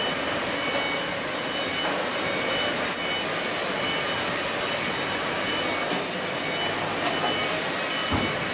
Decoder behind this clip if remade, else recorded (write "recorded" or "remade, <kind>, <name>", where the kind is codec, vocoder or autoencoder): recorded